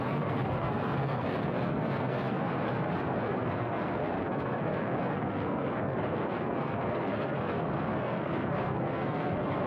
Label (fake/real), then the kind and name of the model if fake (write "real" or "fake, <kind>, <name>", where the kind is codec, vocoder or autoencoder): fake, codec, SNAC